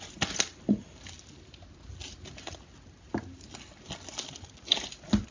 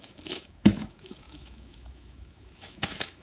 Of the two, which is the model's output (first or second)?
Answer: second